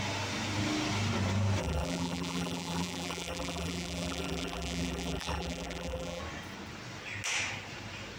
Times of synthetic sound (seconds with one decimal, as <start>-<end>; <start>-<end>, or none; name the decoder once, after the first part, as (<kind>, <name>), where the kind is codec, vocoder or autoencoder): 1.6-6.2 (vocoder, BigVGAN v2)

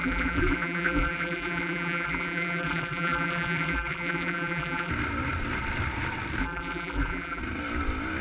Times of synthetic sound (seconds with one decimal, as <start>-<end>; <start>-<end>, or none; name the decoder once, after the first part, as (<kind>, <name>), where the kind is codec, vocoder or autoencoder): 0.0-4.9 (vocoder, BigVGAN v2); 6.4-7.4

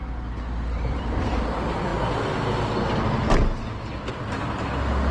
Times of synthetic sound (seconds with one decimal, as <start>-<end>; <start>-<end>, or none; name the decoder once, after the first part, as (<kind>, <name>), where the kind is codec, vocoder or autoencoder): 0.0-1.9 (vocoder, BigVGAN v2)

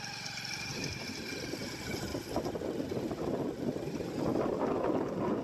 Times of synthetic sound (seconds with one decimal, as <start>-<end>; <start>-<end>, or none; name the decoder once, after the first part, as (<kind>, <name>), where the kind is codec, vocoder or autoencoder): 2.1-4.0 (vocoder, BigVGAN v2)

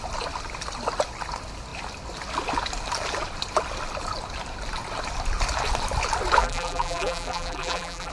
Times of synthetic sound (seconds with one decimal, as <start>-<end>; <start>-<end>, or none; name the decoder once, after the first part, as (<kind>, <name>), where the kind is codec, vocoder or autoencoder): 6.4-8.1 (vocoder, BigVGAN v2)

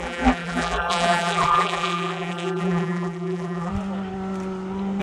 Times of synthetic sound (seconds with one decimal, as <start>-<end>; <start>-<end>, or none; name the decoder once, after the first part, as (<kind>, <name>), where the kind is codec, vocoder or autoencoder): 0.0-3.7 (vocoder, BigVGAN v2)